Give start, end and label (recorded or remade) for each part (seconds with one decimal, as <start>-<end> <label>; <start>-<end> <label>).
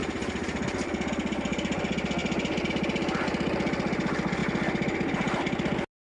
0.0-1.1 remade; 1.1-6.1 recorded